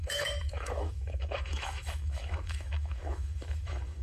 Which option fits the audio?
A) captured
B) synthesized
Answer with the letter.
B